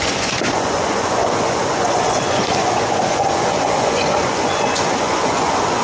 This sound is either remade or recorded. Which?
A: remade